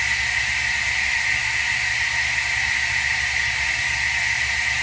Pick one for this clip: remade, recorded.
recorded